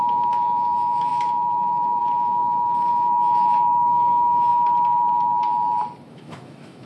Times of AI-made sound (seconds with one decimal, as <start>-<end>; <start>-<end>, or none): 0.0-2.4; 2.9-4.5; 6.1-6.9